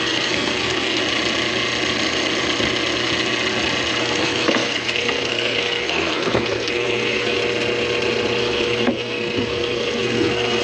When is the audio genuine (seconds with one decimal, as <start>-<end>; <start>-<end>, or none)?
1.0-4.0; 7.4-8.4